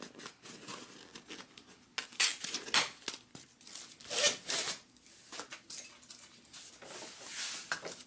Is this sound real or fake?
real